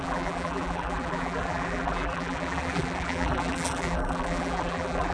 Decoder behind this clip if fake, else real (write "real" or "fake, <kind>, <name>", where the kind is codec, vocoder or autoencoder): fake, vocoder, BigVGAN v2